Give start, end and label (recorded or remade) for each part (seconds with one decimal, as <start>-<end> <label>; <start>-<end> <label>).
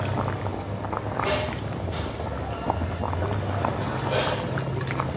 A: 0.0-5.2 recorded